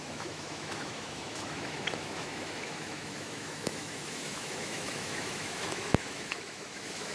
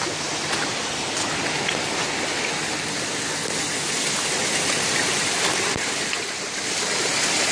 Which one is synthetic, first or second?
first